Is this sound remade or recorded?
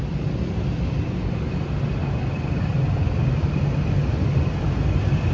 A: recorded